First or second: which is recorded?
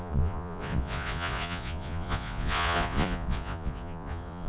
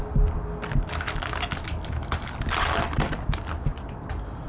second